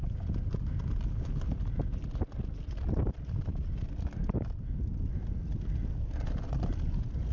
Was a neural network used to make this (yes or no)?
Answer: no